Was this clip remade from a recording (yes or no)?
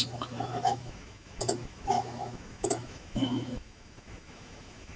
yes